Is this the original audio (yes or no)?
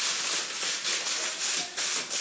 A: yes